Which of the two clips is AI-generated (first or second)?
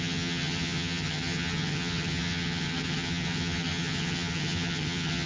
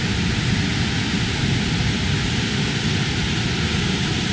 first